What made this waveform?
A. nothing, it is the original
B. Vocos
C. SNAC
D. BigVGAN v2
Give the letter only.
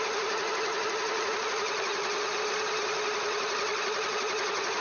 A